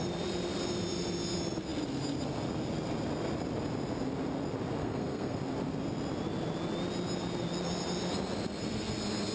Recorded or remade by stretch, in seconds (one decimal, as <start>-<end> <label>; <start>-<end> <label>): 0.0-4.8 recorded; 4.8-5.4 remade; 5.4-9.3 recorded